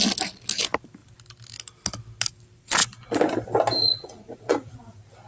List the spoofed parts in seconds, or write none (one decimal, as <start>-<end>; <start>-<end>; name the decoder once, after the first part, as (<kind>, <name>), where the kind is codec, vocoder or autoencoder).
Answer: 3.8-4.7 (vocoder, Vocos)